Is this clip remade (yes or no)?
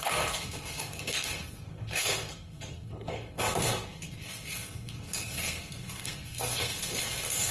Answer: yes